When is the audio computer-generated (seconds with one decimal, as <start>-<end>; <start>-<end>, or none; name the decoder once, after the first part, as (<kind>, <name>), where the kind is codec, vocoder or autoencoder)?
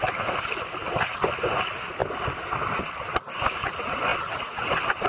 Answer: none